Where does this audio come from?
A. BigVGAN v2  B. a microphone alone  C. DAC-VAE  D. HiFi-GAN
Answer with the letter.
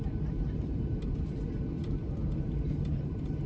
A